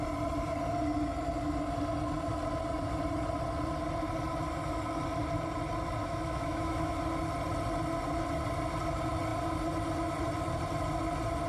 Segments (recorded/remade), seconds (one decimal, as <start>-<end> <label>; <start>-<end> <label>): 0.0-6.0 recorded; 6.0-7.0 remade; 7.0-11.5 recorded